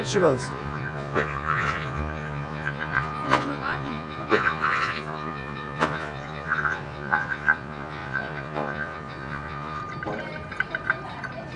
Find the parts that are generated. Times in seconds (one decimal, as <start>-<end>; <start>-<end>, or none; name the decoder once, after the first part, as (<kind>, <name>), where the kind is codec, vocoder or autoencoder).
0.0-9.8 (vocoder, Vocos)